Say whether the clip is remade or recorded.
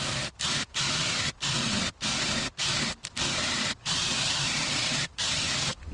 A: recorded